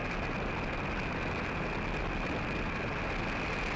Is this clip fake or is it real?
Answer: real